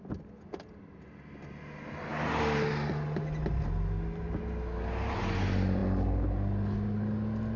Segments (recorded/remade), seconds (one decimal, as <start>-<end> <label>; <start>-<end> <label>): 0.0-7.6 recorded